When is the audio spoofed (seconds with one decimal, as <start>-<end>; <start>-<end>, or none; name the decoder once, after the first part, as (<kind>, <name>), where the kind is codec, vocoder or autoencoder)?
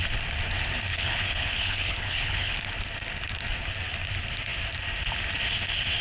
0.9-2.7 (codec, HILCodec)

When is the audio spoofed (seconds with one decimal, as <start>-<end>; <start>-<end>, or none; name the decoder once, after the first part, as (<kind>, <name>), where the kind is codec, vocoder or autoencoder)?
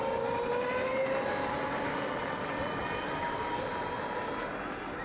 none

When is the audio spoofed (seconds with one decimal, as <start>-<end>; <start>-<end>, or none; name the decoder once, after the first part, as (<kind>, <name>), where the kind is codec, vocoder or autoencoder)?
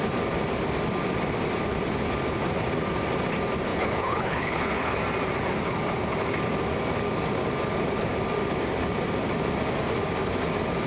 3.7-5.0 (codec, HILCodec)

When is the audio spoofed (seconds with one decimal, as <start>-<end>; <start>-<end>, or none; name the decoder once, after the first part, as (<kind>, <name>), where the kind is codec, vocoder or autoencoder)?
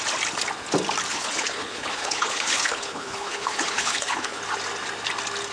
1.1-4.4 (codec, HILCodec)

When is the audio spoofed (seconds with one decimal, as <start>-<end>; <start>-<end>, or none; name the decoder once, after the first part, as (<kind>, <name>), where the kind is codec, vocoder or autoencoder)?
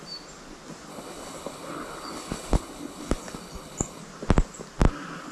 0.9-4.0 (codec, HILCodec)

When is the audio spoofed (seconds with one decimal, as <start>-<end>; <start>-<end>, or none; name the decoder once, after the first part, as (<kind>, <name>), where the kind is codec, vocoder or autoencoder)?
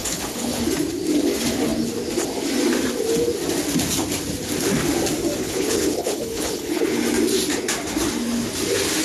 0.0-0.6 (codec, HILCodec); 5.4-7.0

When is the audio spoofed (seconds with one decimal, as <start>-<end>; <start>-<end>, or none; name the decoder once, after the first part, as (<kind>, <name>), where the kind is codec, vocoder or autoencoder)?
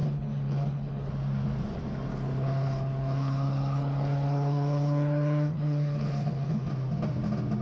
0.0-1.1 (codec, HILCodec); 2.1-6.7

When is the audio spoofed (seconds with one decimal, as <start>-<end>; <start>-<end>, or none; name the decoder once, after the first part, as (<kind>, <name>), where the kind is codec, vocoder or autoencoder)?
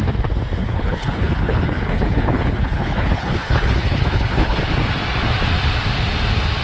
0.6-4.6 (codec, HILCodec)